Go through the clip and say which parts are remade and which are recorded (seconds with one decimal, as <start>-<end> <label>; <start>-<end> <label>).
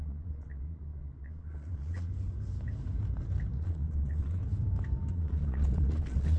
0.0-2.1 remade; 2.1-3.6 recorded; 3.6-4.4 remade; 4.4-5.1 recorded; 5.1-6.4 remade